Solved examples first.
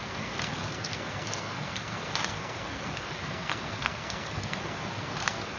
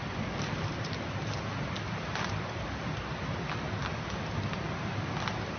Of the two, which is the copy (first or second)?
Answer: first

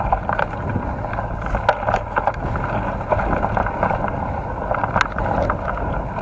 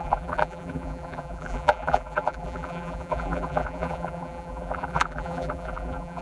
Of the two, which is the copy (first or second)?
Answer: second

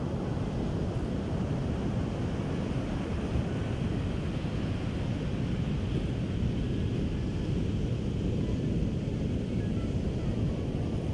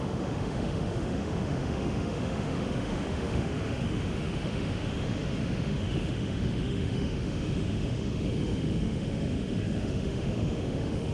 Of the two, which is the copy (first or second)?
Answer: second